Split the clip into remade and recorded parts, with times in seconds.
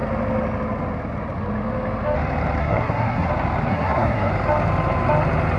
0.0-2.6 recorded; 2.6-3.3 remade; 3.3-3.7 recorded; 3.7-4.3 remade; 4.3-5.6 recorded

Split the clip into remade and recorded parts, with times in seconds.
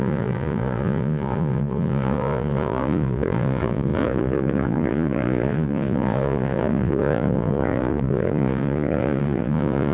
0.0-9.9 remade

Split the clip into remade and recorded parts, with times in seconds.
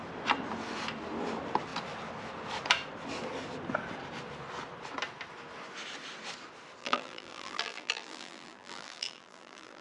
0.0-6.8 recorded; 6.8-9.8 remade